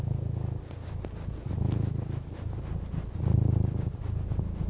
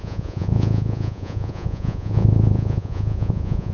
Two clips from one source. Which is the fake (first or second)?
second